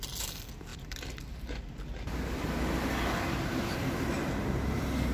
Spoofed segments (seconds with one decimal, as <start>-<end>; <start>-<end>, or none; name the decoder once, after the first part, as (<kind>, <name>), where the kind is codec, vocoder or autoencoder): none